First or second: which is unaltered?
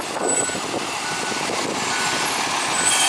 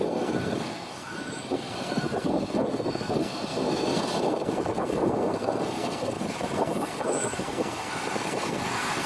first